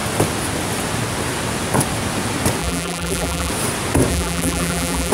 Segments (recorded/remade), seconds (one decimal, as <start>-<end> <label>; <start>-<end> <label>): 0.0-2.6 recorded; 2.6-3.5 remade; 3.5-4.1 recorded; 4.1-5.1 remade